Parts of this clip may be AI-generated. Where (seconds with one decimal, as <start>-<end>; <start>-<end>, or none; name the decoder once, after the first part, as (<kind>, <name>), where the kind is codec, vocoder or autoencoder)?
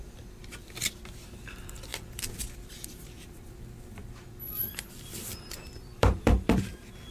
1.9-3.4 (vocoder, BigVGAN v2); 4.5-7.1